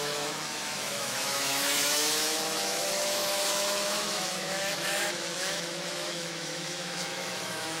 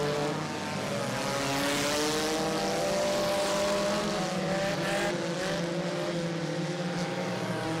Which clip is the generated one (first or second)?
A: first